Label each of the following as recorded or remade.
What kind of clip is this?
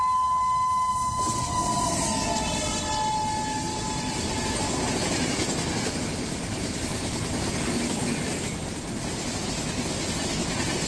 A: recorded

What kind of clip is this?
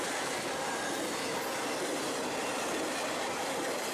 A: recorded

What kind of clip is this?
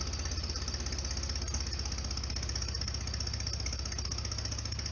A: recorded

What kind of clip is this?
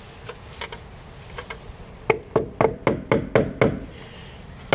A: recorded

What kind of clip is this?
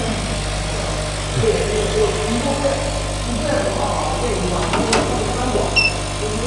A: recorded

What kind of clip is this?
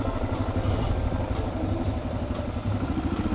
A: recorded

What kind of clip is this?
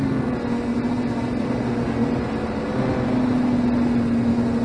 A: recorded